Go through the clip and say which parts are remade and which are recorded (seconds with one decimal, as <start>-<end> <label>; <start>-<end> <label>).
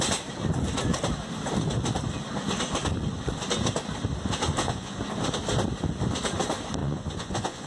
0.0-4.5 recorded; 4.5-5.0 remade; 5.0-6.8 recorded; 6.8-7.7 remade